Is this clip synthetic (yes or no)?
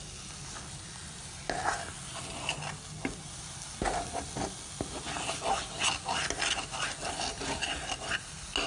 no